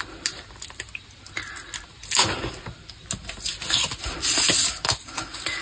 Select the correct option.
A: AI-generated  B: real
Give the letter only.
B